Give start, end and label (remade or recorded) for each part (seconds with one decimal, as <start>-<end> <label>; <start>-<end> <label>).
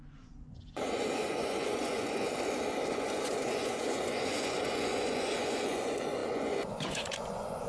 0.0-2.3 remade; 2.3-2.9 recorded; 2.9-7.7 remade